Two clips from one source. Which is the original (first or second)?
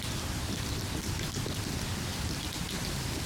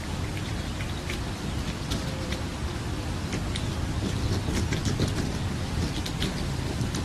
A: first